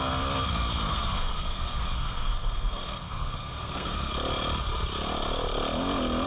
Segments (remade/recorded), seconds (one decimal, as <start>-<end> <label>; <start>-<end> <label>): 0.0-0.9 recorded; 0.9-4.1 remade; 4.1-6.3 recorded